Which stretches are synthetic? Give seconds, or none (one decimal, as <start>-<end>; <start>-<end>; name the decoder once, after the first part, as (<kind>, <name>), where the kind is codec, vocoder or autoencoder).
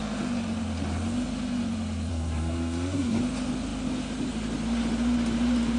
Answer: 2.1-3.2 (codec, SNAC)